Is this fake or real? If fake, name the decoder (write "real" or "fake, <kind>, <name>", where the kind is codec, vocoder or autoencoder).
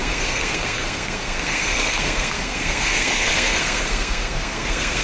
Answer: fake, codec, SNAC